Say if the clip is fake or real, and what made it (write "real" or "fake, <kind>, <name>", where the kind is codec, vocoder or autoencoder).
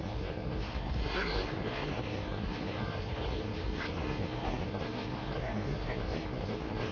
fake, codec, SNAC